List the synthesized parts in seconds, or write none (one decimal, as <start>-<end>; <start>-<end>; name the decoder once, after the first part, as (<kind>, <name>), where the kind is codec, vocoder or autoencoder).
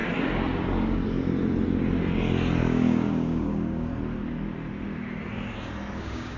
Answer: 2.6-3.9 (codec, DAC); 6.0-6.4